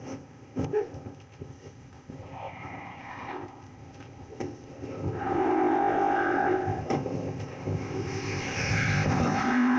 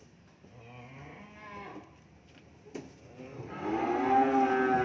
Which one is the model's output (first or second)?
first